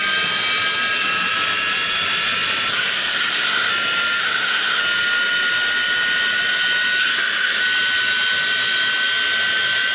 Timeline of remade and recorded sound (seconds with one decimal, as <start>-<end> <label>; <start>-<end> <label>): 0.0-2.7 recorded; 2.7-3.7 remade; 3.7-4.2 recorded; 4.2-4.8 remade; 4.8-7.0 recorded; 7.0-7.6 remade; 7.6-9.9 recorded